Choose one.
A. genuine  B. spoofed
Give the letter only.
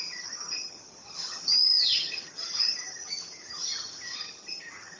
B